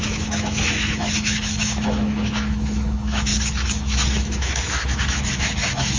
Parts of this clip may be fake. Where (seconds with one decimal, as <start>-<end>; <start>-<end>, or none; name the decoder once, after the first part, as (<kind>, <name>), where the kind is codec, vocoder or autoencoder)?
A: 0.0-6.0 (autoencoder, DAC-VAE)